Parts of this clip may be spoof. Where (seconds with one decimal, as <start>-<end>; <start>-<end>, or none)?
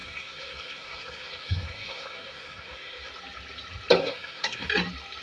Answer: 0.0-3.1; 4.0-4.7